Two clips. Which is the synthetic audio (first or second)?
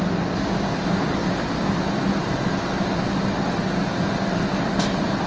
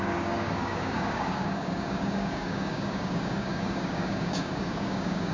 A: second